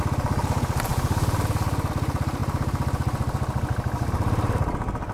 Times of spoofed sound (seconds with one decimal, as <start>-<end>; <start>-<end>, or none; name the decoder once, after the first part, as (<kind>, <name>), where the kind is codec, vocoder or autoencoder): 0.0-5.1 (vocoder, BigVGAN v2)